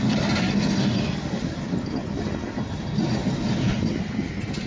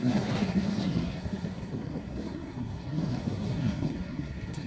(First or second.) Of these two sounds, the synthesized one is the second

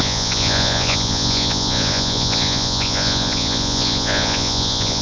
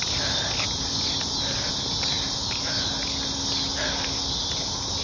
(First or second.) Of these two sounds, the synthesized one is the first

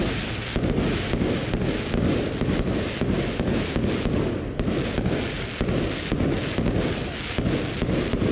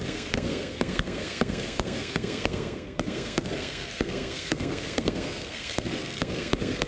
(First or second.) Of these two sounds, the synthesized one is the second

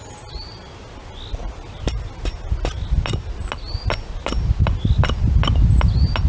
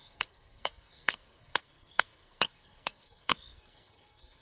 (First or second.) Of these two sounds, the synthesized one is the second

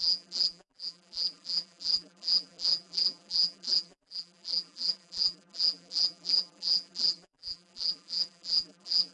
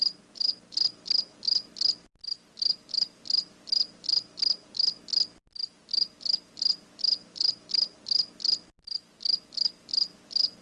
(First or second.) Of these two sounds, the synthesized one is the first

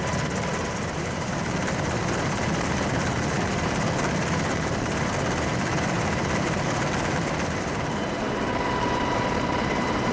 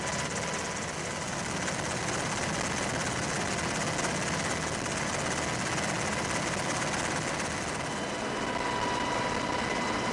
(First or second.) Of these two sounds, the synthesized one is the first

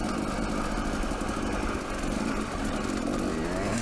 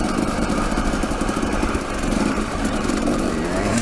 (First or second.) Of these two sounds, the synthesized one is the second